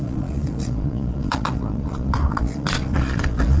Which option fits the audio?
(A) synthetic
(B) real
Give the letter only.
A